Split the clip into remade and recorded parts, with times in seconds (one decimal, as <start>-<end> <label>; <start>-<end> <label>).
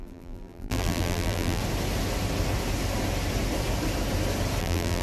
0.0-1.6 remade; 1.6-4.6 recorded; 4.6-5.0 remade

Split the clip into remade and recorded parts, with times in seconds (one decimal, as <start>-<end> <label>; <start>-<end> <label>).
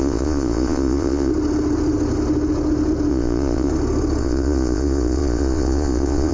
0.0-1.3 remade; 1.3-3.1 recorded; 3.1-3.7 remade; 3.7-4.2 recorded; 4.2-6.3 remade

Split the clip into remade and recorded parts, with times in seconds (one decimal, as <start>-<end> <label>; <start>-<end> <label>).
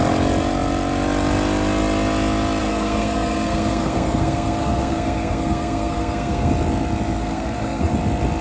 0.0-2.6 recorded; 2.6-6.5 remade; 6.5-7.2 recorded; 7.2-7.9 remade; 7.9-8.4 recorded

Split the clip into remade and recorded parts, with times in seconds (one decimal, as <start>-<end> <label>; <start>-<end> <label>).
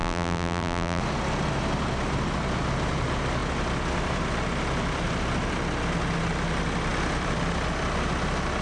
0.0-1.0 remade; 1.0-8.6 recorded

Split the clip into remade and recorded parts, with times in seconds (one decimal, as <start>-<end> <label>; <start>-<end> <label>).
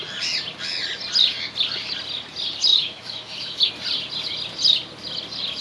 0.0-2.7 recorded; 2.7-3.7 remade; 3.7-5.6 recorded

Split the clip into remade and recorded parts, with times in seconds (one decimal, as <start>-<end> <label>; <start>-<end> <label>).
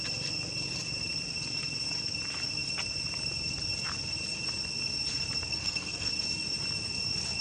0.0-5.5 recorded; 5.5-6.1 remade; 6.1-7.4 recorded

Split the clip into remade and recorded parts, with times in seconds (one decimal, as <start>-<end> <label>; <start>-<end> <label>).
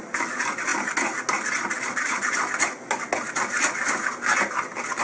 0.0-5.0 recorded